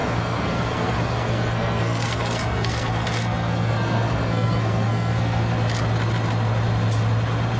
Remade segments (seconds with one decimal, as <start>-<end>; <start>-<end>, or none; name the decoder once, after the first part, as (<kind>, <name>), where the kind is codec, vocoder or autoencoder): 0.0-5.5 (codec, SNAC)